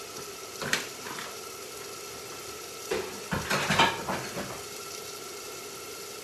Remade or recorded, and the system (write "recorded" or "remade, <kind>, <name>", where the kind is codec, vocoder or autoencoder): recorded